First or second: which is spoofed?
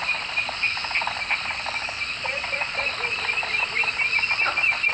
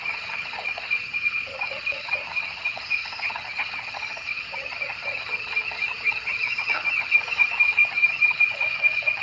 second